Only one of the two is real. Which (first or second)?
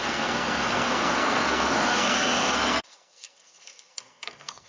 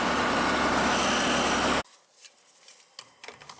second